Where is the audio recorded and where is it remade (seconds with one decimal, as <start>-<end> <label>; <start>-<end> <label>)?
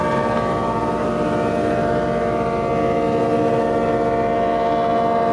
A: 0.0-5.3 recorded